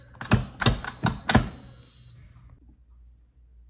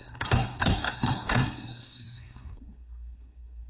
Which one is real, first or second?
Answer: first